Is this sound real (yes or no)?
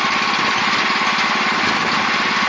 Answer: yes